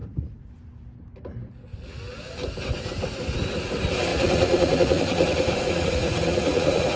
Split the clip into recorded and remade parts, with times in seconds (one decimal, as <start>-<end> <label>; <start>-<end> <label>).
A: 0.0-0.5 remade; 0.5-4.1 recorded; 4.1-7.0 remade